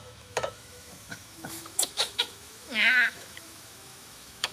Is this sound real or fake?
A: fake